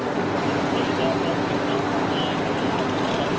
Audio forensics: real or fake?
real